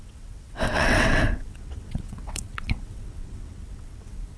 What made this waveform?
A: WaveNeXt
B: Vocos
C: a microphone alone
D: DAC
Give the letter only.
A